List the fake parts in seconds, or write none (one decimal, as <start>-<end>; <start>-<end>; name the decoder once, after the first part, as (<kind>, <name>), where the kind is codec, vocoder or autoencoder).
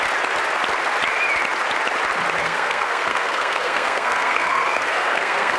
2.4-5.6 (codec, SNAC)